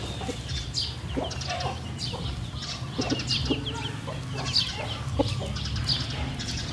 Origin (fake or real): real